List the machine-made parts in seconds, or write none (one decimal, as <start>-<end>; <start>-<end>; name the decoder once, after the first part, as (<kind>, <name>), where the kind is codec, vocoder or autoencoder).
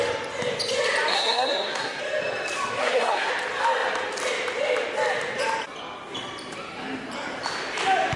1.1-2.0 (codec, SNAC); 2.8-3.3